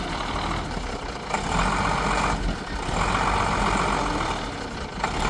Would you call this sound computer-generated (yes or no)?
no